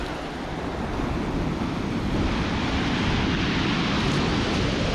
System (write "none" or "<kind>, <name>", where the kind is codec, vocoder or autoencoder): none